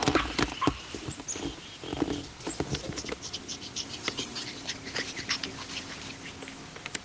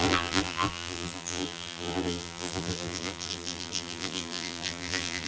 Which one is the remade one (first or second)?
second